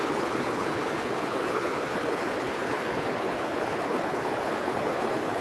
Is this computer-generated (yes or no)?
yes